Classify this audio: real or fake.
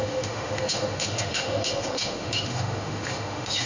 fake